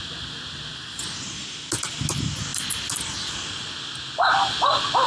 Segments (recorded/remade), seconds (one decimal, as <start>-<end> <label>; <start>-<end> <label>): 0.0-5.1 recorded